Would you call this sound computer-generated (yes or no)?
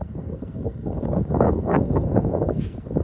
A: yes